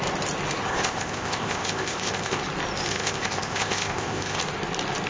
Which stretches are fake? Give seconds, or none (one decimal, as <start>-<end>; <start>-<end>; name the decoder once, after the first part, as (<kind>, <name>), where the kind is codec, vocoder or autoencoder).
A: 0.7-2.4 (codec, ZipCodec); 2.9-4.4